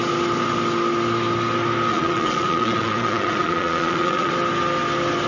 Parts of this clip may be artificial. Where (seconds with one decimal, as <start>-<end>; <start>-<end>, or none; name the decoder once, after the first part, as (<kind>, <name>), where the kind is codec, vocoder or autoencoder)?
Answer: 1.9-4.3 (vocoder, Vocos)